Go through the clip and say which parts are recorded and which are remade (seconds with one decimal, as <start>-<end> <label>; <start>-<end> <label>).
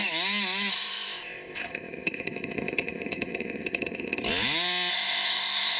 0.0-0.7 recorded; 0.7-4.2 remade; 4.2-4.9 recorded; 4.9-5.8 remade